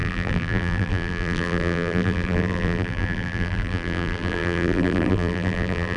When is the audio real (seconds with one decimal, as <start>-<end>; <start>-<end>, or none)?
none